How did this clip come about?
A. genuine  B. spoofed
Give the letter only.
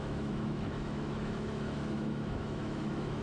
B